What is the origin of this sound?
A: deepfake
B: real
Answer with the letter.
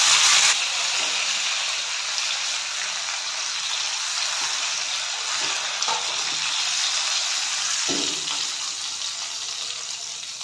B